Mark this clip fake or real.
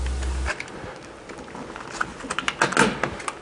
real